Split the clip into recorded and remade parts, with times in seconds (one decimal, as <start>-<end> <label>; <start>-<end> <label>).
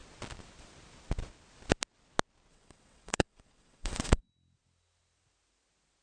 0.0-2.5 recorded; 2.5-4.2 remade; 4.2-6.0 recorded